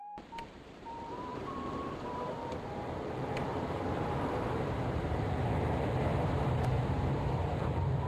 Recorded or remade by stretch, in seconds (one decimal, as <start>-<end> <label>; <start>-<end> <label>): 0.0-8.1 remade